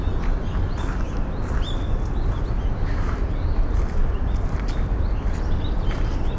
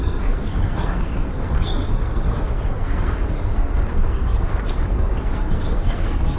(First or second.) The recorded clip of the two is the first